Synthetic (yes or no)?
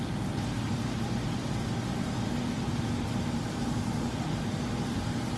no